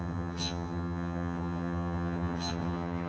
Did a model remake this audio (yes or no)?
yes